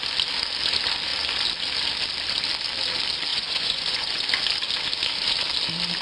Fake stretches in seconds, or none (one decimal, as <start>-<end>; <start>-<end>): 3.3-4.2